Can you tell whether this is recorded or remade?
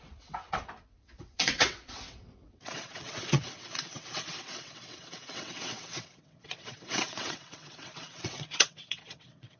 remade